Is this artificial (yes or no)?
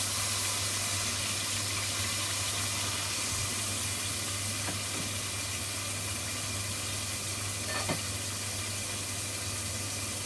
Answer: no